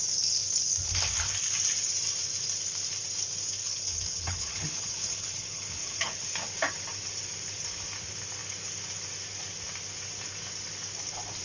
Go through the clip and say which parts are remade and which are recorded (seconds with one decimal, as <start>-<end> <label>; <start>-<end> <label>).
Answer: 0.0-3.6 recorded; 3.6-6.3 remade; 6.3-11.4 recorded